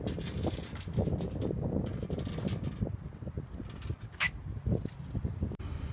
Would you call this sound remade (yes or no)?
no